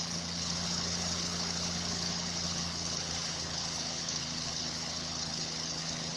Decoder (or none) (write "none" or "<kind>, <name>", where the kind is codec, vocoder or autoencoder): codec, HILCodec